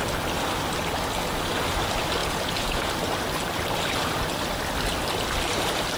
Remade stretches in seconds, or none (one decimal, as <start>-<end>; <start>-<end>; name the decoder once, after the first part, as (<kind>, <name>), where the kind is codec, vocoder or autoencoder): 2.2-2.9 (vocoder, Vocos)